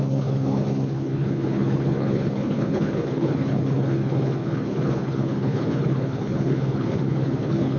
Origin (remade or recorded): remade